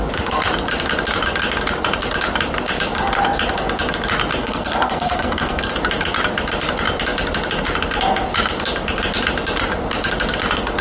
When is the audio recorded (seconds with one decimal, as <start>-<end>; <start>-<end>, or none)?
0.0-4.4; 5.7-10.8